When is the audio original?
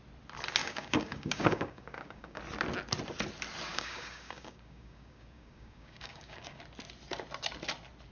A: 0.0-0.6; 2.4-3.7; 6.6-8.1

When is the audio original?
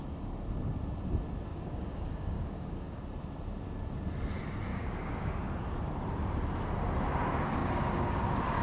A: 0.0-1.5; 3.0-4.7; 5.3-8.6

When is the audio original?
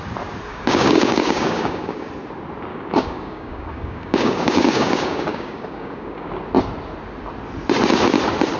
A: 0.0-0.5; 2.1-2.7; 6.3-8.6